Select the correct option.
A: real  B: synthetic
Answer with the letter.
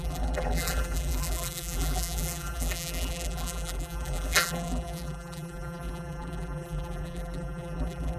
B